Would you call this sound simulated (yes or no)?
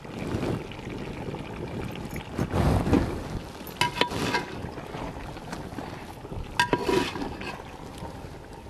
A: no